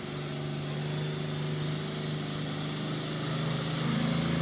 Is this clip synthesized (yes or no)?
no